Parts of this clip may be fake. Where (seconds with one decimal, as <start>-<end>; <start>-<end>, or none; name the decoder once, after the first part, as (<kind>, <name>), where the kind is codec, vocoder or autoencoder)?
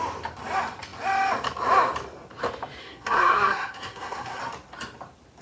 2.8-4.4 (codec, SNAC)